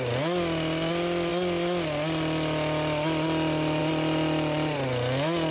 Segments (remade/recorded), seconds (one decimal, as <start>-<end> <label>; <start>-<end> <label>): 0.0-5.5 recorded